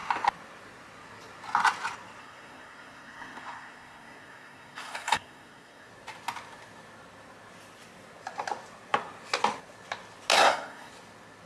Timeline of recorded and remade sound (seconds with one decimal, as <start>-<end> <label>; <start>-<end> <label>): 0.0-2.2 recorded; 2.2-5.9 remade; 5.9-10.3 recorded; 10.3-10.9 remade; 10.9-11.5 recorded